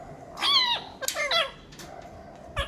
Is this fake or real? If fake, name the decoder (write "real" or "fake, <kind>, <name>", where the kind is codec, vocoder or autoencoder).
real